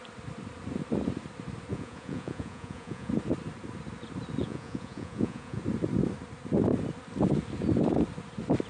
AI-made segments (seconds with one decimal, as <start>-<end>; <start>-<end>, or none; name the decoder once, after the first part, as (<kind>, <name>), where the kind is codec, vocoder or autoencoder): 1.7-3.1 (vocoder, Vocos); 4.4-5.6